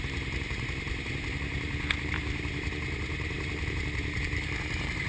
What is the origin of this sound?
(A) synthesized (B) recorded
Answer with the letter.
A